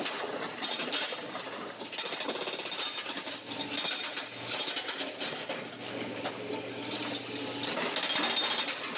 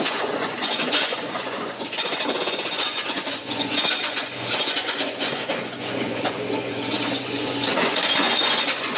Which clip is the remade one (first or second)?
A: second